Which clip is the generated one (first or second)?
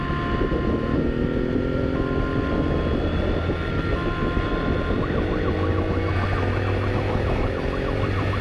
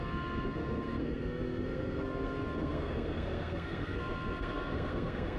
second